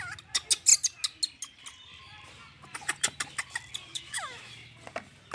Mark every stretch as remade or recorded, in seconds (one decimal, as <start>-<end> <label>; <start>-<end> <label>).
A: 0.0-3.9 recorded; 3.9-4.5 remade; 4.5-5.3 recorded